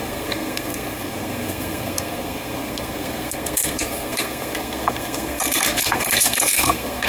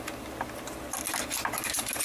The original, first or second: second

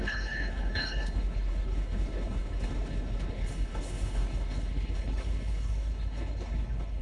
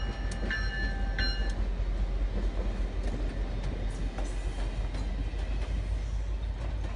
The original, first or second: second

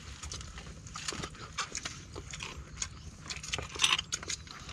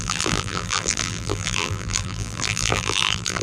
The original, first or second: first